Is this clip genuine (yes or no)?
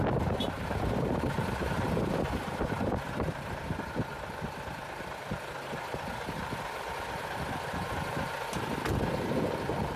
no